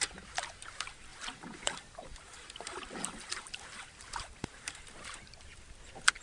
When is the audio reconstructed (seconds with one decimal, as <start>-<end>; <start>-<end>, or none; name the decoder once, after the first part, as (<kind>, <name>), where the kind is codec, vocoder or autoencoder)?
1.1-4.8 (vocoder, BigVGAN v2)